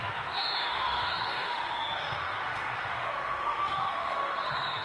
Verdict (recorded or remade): remade